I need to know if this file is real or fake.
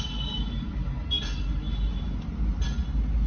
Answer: real